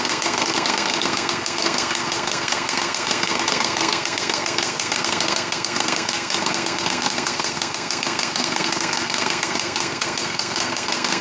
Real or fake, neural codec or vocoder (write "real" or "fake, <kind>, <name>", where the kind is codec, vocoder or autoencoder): fake, codec, SNAC